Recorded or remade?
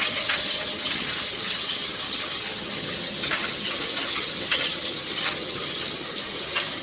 remade